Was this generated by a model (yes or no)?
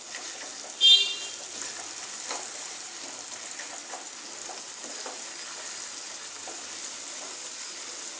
no